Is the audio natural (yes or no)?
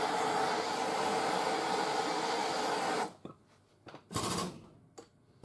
yes